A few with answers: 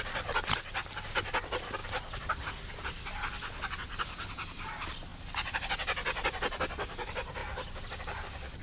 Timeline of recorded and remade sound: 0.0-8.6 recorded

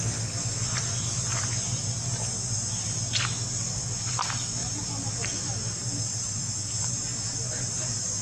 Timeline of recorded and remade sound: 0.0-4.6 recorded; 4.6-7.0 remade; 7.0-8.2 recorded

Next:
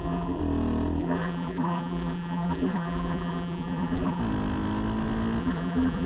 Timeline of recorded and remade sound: 0.0-0.4 remade; 0.4-1.0 recorded; 1.0-4.2 remade; 4.2-5.4 recorded; 5.4-6.1 remade